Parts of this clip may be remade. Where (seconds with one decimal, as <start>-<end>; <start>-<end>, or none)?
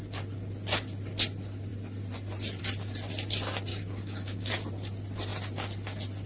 3.7-4.5